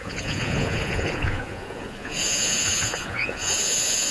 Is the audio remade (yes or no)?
yes